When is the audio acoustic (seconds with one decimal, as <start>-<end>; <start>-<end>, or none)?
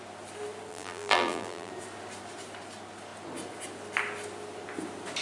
0.0-0.7; 1.7-5.2